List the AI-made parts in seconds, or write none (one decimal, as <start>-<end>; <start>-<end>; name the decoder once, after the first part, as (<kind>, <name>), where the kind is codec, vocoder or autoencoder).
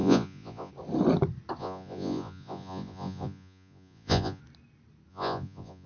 0.0-0.7 (vocoder, Vocos); 1.6-4.4; 5.1-5.9